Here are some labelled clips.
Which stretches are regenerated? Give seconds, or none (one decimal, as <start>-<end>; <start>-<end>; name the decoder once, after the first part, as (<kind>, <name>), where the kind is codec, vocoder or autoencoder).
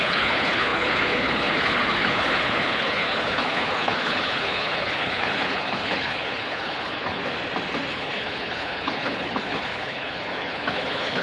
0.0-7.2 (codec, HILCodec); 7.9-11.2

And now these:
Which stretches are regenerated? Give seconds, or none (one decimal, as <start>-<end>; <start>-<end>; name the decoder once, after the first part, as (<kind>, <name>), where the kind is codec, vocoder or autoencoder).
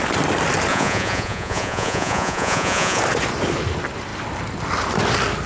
0.7-3.0 (vocoder, Vocos)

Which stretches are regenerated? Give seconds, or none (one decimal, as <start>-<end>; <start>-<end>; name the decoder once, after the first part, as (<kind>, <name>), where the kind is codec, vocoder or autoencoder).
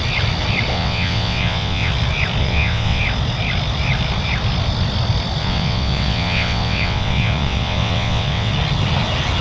0.7-1.9 (vocoder, WaveNeXt); 2.4-3.0; 5.4-8.5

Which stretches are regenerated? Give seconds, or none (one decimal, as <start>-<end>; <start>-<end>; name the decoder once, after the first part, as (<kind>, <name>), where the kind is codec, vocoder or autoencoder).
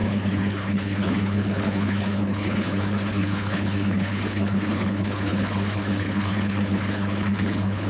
0.0-7.9 (codec, HILCodec)